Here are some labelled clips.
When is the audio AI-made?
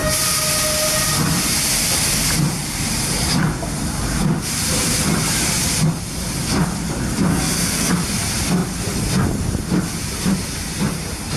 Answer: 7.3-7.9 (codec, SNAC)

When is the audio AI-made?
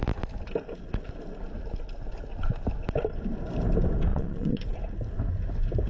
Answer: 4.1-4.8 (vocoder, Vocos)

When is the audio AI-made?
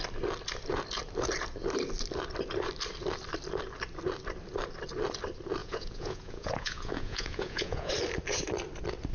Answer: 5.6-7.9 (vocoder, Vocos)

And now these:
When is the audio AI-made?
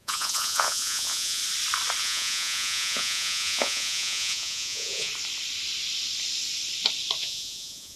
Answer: 0.0-1.4 (vocoder, Vocos); 2.0-5.1; 7.2-8.0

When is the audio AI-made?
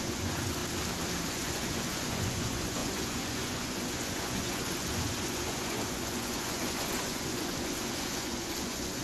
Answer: 0.0-0.6 (vocoder, Vocos); 1.3-9.0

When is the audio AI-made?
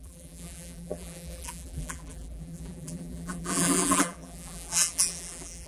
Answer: 0.0-5.7 (vocoder, BigVGAN v2)